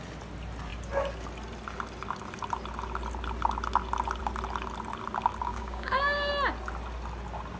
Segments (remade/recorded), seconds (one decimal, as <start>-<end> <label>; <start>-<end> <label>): 0.0-5.5 recorded; 5.5-6.3 remade; 6.3-7.6 recorded